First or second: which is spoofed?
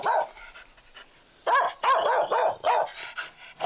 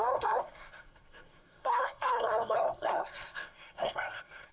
second